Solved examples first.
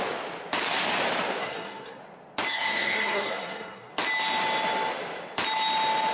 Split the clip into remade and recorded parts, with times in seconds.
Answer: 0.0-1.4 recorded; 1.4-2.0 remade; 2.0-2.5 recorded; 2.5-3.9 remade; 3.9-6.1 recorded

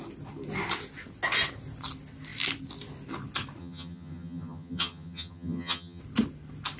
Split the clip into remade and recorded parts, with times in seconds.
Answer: 0.0-3.6 recorded; 3.6-6.0 remade; 6.0-6.8 recorded

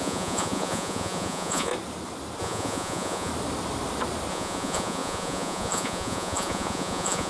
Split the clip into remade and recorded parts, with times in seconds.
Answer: 0.0-1.7 remade; 1.7-2.4 recorded; 2.4-3.3 remade; 3.3-4.3 recorded; 4.3-7.3 remade

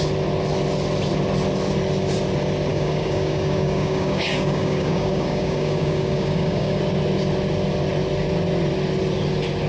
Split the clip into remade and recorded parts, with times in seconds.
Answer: 0.0-2.7 recorded; 2.7-6.8 remade; 6.8-9.7 recorded

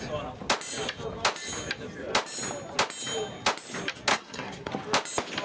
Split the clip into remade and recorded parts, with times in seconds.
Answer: 0.0-4.1 recorded; 4.1-4.7 remade; 4.7-5.4 recorded